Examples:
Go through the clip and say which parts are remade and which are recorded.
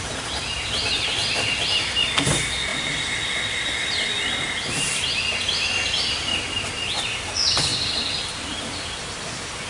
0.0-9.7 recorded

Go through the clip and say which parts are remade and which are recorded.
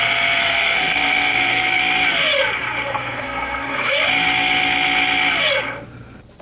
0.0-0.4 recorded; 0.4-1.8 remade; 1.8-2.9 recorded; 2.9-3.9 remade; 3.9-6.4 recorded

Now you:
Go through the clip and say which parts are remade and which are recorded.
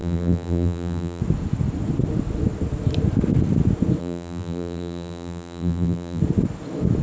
0.0-1.2 remade; 1.2-4.0 recorded; 4.0-6.2 remade; 6.2-7.0 recorded